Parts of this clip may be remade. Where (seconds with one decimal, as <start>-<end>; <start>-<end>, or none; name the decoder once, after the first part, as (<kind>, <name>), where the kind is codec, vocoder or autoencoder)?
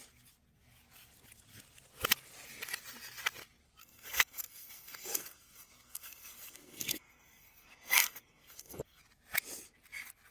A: 3.8-9.0 (codec, SNAC)